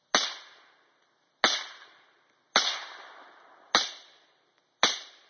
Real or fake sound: real